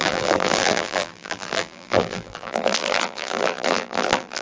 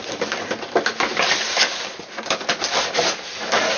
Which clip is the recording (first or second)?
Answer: second